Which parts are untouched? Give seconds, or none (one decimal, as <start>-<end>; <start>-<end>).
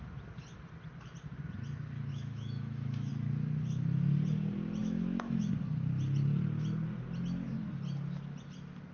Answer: 0.0-2.1; 3.1-4.8; 5.5-8.9